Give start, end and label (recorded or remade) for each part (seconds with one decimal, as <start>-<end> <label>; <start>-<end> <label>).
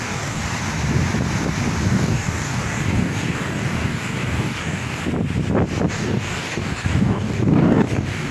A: 0.0-0.4 remade; 0.4-1.9 recorded; 1.9-5.0 remade; 5.0-5.9 recorded; 5.9-8.3 remade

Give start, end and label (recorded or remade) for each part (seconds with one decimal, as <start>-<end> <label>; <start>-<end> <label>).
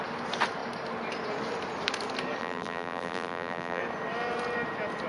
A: 0.0-2.4 recorded; 2.4-3.8 remade; 3.8-5.1 recorded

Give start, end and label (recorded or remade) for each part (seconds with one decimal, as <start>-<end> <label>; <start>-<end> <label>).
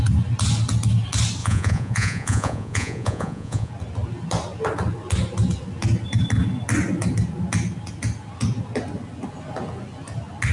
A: 0.0-1.4 recorded; 1.4-3.7 remade; 3.7-10.5 recorded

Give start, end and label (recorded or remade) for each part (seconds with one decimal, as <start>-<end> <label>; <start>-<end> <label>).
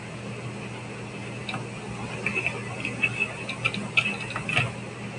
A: 0.0-5.2 recorded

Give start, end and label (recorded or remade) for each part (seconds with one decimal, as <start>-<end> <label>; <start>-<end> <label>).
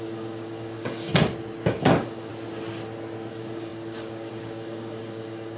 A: 0.0-1.1 remade; 1.1-1.8 recorded; 1.8-2.3 remade; 2.3-3.3 recorded; 3.3-5.6 remade